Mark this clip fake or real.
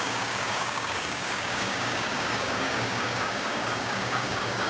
fake